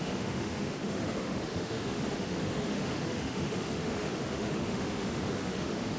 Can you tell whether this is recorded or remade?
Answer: remade